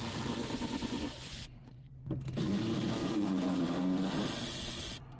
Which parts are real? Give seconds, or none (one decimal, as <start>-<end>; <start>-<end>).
0.0-0.4; 1.9-3.0; 3.6-5.2